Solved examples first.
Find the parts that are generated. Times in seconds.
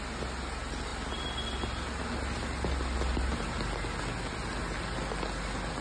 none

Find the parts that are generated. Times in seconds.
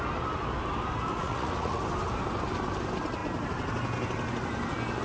1.1-1.8 (vocoder, Vocos)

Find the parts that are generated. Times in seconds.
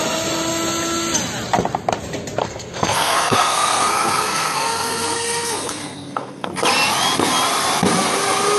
2.4-6.5 (codec, SNAC)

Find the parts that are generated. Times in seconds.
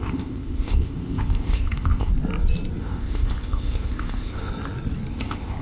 0.0-2.1 (codec, ZipCodec); 2.8-4.5; 5.1-5.6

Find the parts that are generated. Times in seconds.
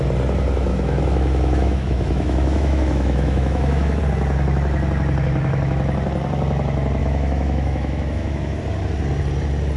0.7-4.0 (autoencoder, DAC-VAE); 7.0-8.6